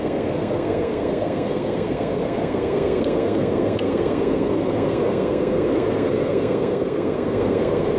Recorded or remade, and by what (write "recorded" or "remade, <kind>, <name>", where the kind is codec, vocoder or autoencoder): remade, codec, SNAC